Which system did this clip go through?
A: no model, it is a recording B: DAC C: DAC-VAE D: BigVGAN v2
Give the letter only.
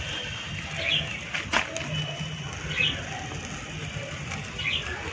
A